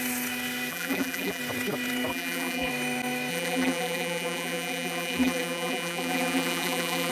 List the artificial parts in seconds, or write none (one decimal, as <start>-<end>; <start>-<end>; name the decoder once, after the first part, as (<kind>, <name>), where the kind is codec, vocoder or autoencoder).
0.7-1.4 (vocoder, BigVGAN v2); 2.1-2.7; 3.3-7.1